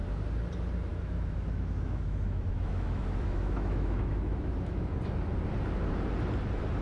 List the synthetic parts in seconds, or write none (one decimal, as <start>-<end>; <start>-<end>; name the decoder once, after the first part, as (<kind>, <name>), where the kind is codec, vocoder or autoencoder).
0.9-5.0 (autoencoder, DAC-VAE)